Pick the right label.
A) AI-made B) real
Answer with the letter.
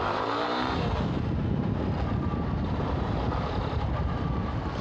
A